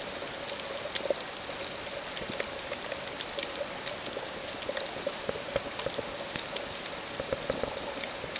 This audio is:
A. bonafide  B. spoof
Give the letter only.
A